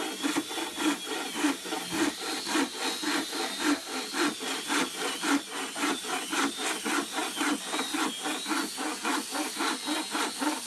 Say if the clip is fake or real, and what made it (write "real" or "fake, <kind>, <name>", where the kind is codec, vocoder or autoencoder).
real